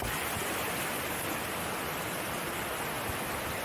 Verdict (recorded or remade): recorded